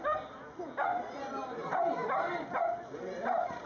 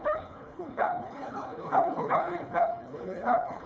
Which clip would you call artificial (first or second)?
second